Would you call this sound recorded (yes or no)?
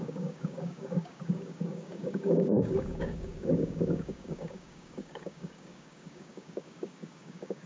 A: no